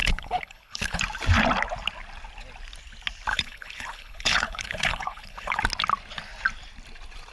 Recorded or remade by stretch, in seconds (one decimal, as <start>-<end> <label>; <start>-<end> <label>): 0.0-1.0 remade; 1.0-3.3 recorded; 3.3-5.6 remade; 5.6-7.3 recorded